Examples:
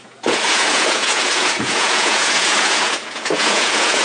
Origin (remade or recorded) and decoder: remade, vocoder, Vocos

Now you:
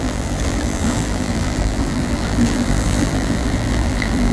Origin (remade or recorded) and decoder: remade, vocoder, BigVGAN v2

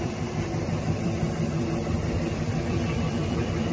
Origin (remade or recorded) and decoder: remade, vocoder, BigVGAN v2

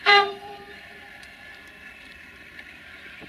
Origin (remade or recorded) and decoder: remade, vocoder, BigVGAN v2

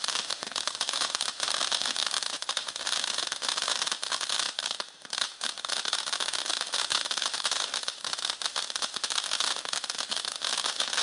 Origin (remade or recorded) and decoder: remade, autoencoder, DAC-VAE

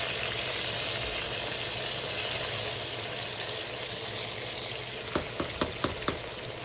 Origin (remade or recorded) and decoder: recorded